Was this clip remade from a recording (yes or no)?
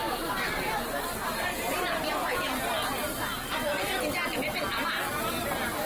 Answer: no